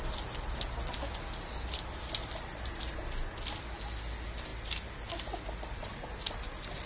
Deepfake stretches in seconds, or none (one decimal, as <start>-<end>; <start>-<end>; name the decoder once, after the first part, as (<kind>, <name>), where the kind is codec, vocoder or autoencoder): none